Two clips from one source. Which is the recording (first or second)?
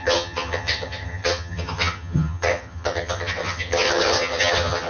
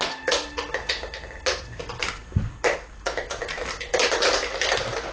second